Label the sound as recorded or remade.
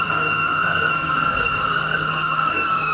remade